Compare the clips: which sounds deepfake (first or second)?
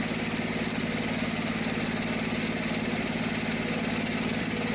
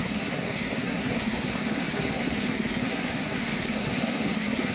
second